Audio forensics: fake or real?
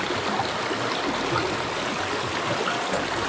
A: real